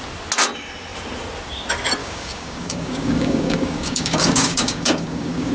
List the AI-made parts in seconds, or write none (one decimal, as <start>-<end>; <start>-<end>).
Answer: 2.0-5.5